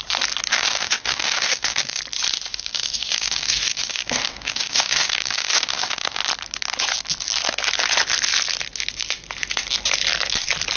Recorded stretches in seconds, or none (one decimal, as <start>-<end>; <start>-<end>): 0.0-0.5; 2.0-2.5; 6.2-10.8